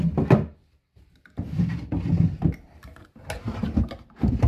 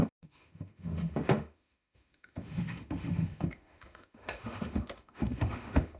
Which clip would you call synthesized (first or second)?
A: second